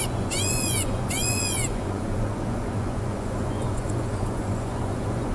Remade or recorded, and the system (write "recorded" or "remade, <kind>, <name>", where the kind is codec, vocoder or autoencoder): remade, vocoder, Vocos